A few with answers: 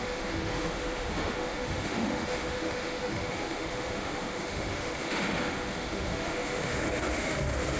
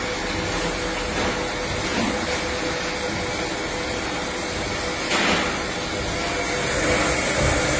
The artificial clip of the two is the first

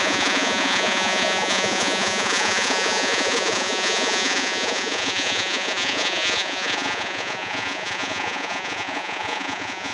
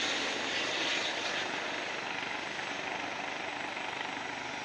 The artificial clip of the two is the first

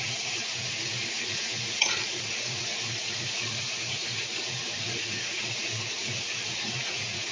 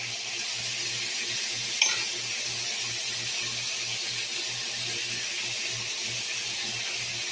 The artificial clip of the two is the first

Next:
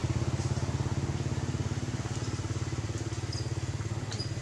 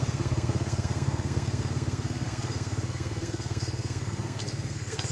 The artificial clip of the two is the second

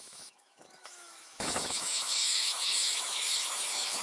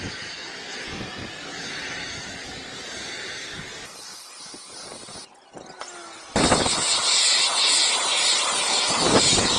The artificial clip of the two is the first